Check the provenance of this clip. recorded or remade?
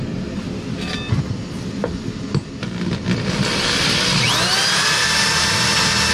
recorded